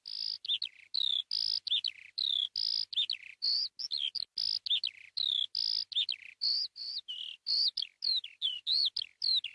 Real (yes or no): yes